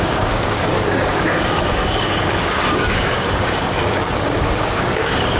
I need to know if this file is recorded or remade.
remade